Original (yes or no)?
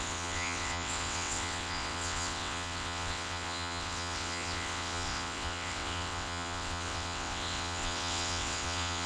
no